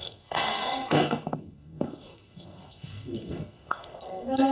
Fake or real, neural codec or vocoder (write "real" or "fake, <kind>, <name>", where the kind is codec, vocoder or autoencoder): fake, codec, SNAC